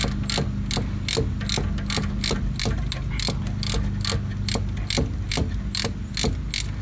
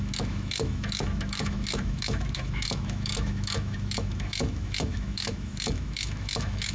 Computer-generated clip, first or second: second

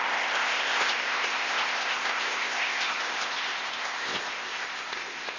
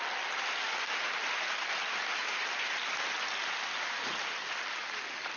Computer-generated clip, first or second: first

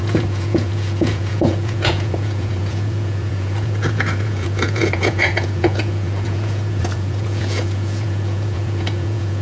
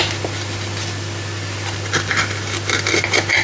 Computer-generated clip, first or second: first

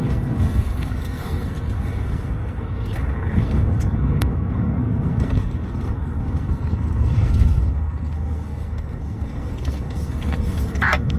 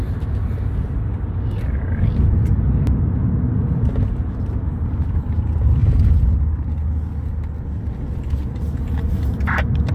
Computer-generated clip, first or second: first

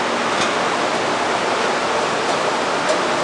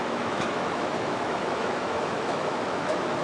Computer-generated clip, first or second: second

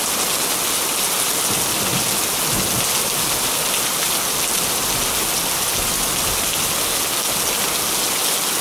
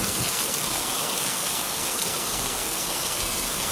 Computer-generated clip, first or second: second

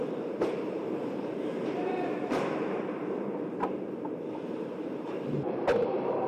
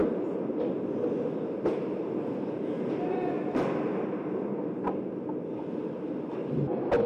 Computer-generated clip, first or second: first